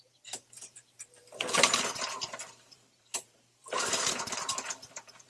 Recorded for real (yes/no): no